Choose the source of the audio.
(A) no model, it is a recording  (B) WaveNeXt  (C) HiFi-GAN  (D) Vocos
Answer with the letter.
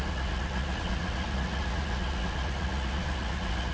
D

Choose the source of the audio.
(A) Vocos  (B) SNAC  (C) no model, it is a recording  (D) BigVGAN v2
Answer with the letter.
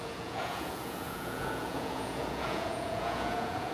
A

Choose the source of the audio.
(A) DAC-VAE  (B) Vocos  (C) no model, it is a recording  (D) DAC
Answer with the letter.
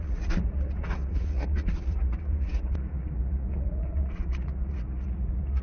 B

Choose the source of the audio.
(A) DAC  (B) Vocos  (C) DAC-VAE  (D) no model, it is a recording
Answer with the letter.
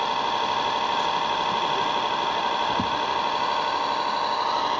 D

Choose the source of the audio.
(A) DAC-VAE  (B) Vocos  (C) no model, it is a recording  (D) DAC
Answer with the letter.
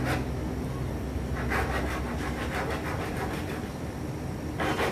C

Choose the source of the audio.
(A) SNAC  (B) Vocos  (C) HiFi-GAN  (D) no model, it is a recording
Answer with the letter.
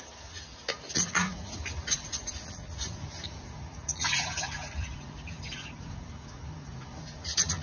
B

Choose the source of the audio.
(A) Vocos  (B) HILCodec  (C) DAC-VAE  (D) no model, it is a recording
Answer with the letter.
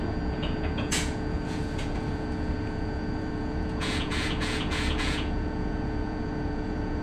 A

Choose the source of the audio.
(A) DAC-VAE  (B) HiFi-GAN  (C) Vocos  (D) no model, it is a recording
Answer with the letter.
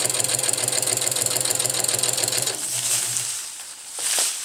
D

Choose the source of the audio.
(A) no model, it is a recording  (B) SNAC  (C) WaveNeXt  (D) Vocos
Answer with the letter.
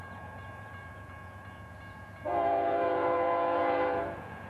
D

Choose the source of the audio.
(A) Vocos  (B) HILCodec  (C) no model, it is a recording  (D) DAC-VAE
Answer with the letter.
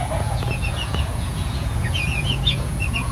A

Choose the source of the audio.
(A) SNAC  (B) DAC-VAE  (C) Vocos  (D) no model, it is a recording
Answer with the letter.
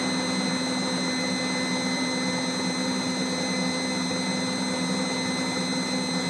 D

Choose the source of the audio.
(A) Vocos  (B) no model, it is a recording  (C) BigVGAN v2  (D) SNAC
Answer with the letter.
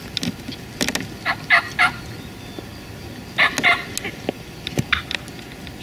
B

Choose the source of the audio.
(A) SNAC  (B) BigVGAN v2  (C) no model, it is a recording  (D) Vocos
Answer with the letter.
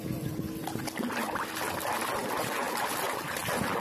C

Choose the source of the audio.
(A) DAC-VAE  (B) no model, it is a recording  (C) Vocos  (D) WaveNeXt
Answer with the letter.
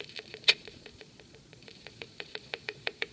C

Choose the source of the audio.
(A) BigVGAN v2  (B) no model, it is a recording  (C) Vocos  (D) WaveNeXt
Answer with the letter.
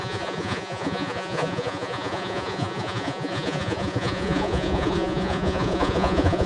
C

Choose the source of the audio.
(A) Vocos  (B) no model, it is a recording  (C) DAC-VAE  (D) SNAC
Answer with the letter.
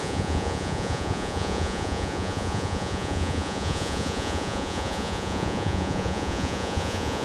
A